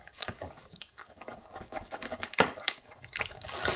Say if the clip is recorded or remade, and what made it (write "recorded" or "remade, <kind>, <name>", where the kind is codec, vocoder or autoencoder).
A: remade, codec, DAC